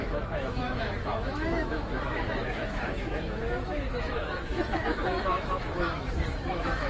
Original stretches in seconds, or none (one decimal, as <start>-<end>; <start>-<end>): none